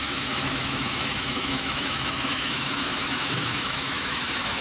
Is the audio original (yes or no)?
no